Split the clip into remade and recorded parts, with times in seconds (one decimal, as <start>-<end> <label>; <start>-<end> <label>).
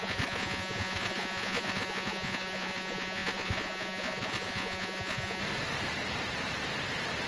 0.0-5.4 remade; 5.4-7.3 recorded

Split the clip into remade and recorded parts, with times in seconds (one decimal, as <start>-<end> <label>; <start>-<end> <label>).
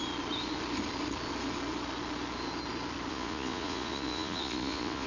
0.0-3.1 recorded; 3.1-5.1 remade